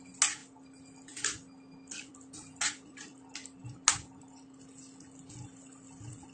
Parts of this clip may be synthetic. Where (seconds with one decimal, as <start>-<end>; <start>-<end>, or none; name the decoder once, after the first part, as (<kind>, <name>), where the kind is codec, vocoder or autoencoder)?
none